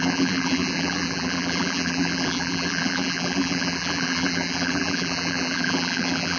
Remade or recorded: remade